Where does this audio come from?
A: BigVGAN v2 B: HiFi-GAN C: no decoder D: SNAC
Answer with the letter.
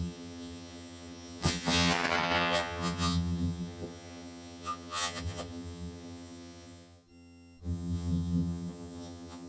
B